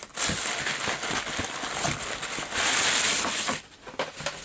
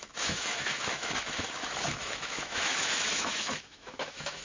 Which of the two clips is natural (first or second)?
first